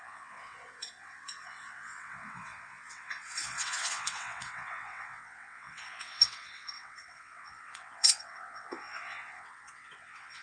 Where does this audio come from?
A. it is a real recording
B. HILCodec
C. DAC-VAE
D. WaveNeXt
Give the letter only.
D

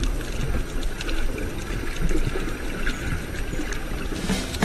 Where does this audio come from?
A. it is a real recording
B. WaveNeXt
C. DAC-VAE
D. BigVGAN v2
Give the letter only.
A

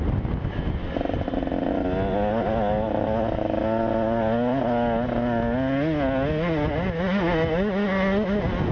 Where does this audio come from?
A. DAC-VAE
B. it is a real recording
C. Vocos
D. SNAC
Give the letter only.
B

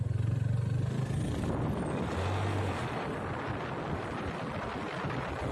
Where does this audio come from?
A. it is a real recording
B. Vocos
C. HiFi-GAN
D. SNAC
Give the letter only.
A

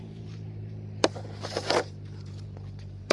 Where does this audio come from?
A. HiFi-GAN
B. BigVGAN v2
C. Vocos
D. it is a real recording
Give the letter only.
B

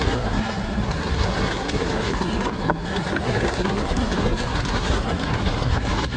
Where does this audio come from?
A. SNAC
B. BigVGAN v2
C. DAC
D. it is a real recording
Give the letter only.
A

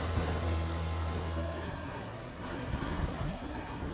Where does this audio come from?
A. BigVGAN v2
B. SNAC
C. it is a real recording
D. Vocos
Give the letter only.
B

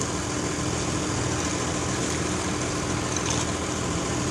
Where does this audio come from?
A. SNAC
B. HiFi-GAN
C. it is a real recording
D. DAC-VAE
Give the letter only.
C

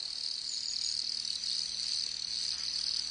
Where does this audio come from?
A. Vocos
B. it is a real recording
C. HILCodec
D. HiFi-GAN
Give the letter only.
B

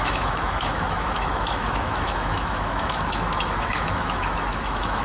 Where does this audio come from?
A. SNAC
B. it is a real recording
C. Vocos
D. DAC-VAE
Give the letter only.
D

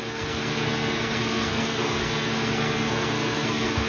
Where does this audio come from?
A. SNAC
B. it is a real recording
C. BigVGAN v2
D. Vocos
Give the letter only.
A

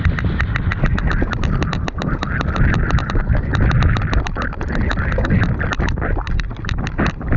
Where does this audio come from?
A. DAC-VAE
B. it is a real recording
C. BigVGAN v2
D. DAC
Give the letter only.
B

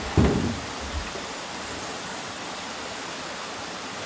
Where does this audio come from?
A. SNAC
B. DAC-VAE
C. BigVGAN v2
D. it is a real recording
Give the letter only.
D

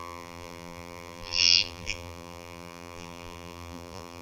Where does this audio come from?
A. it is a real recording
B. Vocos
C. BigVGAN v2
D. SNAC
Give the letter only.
C